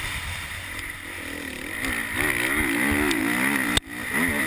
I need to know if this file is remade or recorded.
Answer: recorded